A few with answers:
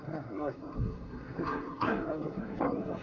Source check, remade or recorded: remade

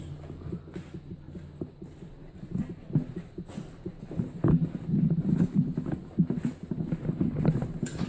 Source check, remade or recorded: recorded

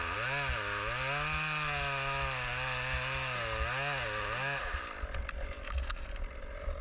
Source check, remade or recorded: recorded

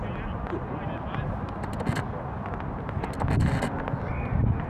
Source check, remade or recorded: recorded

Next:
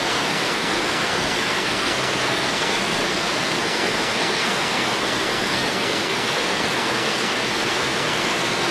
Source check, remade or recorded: remade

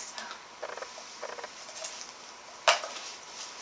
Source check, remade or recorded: recorded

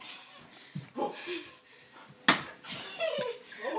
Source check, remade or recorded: recorded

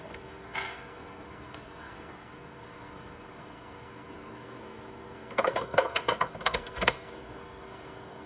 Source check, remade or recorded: remade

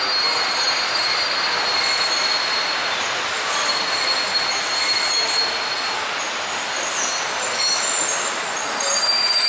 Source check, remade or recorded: recorded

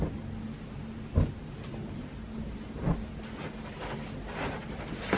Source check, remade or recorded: recorded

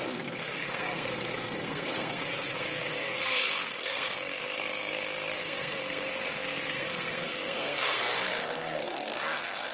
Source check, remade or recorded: remade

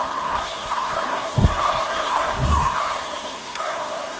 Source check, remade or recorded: remade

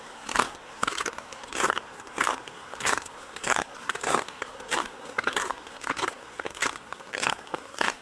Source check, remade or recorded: remade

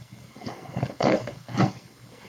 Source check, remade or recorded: remade